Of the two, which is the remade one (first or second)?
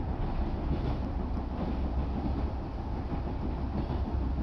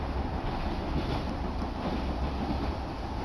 second